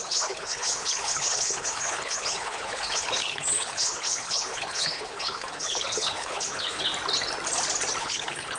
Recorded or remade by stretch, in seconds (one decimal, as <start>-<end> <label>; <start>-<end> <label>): 0.0-6.9 remade; 6.9-8.0 recorded; 8.0-8.6 remade